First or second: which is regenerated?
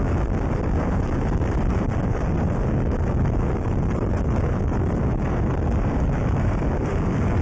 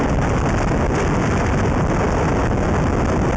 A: first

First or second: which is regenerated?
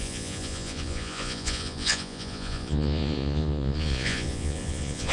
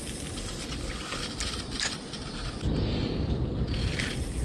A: first